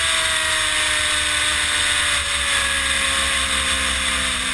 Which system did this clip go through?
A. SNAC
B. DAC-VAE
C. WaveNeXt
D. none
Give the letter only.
D